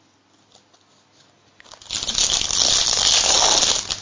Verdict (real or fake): real